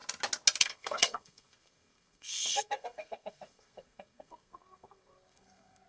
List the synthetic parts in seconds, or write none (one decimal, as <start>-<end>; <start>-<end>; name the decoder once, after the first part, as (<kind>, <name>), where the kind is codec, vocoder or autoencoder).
0.6-5.9 (codec, SNAC)